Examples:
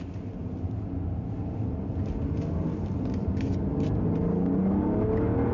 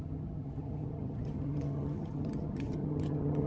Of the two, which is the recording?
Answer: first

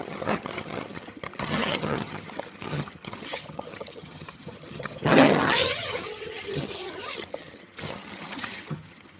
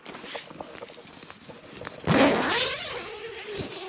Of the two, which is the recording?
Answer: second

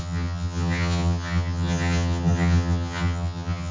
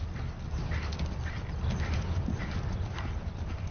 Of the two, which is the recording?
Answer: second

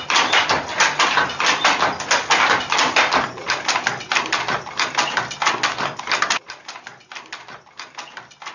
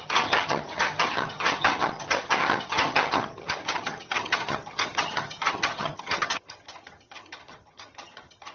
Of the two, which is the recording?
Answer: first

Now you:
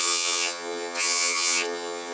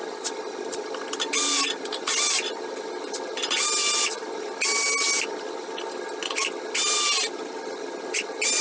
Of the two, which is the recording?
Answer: second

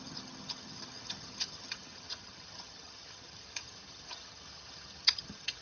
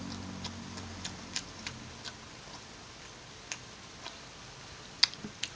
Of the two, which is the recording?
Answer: second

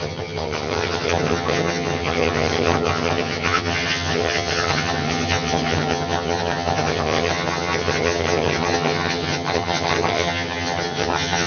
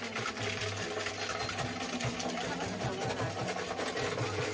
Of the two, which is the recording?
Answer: second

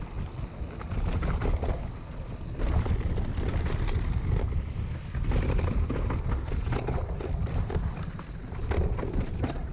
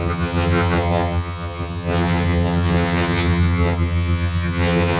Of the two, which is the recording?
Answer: first